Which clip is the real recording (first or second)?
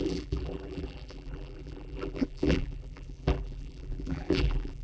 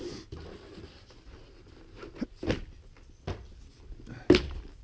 second